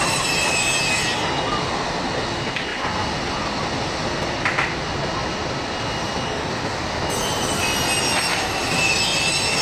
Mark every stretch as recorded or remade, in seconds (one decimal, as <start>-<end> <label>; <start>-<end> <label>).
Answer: 0.0-2.7 recorded; 2.7-4.3 remade; 4.3-5.2 recorded; 5.2-6.8 remade; 6.8-8.3 recorded; 8.3-8.8 remade; 8.8-9.6 recorded